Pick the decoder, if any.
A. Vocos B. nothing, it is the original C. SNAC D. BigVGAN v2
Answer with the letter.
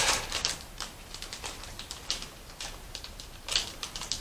D